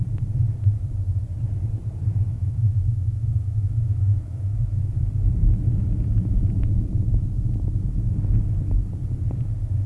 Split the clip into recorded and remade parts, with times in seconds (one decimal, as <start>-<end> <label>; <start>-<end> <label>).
0.0-2.3 recorded; 2.3-5.0 remade; 5.0-9.9 recorded